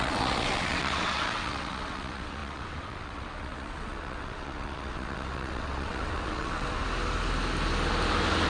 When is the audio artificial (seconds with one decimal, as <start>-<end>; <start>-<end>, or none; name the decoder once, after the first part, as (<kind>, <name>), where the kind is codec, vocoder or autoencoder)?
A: 0.0-6.8 (vocoder, WaveNeXt)